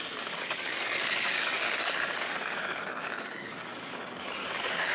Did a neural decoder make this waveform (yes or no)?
yes